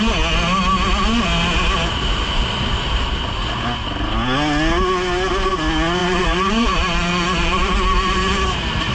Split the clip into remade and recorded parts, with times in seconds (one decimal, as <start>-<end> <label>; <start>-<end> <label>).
0.0-6.0 recorded; 6.0-8.9 remade